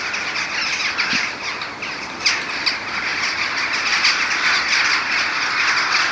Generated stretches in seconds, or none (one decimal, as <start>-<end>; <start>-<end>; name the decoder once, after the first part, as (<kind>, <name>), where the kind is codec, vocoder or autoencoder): none